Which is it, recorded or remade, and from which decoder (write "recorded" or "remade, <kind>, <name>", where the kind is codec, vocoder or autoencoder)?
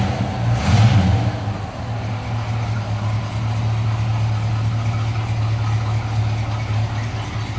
recorded